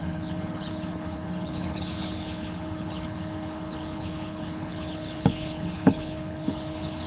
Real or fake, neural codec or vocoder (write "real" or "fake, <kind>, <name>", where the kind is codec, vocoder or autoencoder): fake, codec, HILCodec